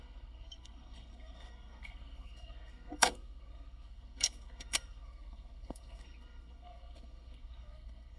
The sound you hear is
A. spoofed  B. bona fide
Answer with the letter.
A